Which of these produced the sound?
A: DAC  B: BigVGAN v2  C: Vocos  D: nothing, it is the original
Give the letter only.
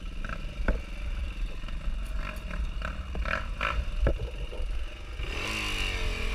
D